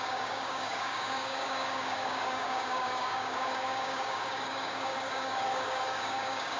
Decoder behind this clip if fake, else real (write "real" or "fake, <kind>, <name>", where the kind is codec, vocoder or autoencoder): fake, codec, DAC